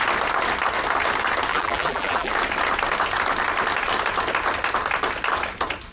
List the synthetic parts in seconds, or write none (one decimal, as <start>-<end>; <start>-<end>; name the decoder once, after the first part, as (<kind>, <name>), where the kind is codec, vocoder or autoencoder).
1.5-2.3 (vocoder, BigVGAN v2)